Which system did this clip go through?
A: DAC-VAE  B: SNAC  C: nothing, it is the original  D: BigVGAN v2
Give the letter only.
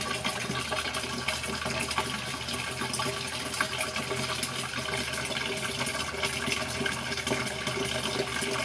C